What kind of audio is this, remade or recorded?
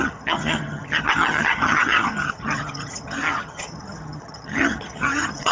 remade